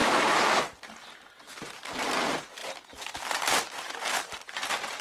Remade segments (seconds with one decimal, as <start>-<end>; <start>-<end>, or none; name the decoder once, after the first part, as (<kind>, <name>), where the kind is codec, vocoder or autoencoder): 0.0-2.6 (vocoder, BigVGAN v2); 3.7-5.0